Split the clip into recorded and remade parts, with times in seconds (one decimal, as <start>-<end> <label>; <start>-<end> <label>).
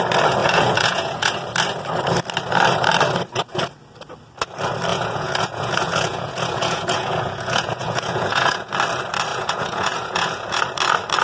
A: 0.0-0.4 recorded; 0.4-1.3 remade; 1.3-4.9 recorded; 4.9-8.7 remade; 8.7-9.3 recorded; 9.3-10.6 remade; 10.6-11.2 recorded